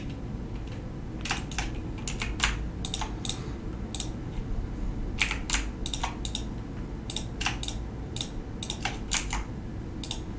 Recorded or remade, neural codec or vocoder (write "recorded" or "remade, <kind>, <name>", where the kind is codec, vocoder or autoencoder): recorded